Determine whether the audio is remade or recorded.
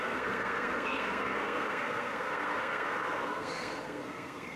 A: remade